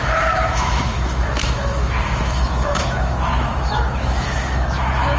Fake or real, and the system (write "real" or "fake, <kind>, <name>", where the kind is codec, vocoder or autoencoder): fake, autoencoder, DAC-VAE